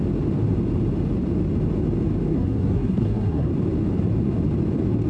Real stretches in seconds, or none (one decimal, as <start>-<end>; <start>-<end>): 0.0-2.3; 3.5-5.1